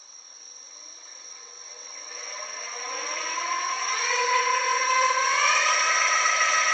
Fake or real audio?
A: fake